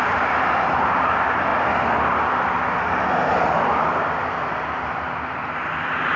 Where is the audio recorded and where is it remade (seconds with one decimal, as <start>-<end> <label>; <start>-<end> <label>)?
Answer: 0.0-1.5 remade; 1.5-4.3 recorded; 4.3-5.4 remade; 5.4-6.2 recorded